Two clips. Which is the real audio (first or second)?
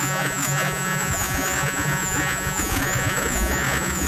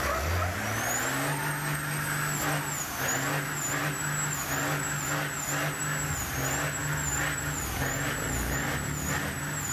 second